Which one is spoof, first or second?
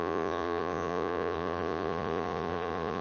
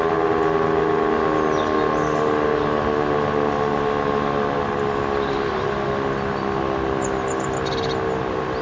first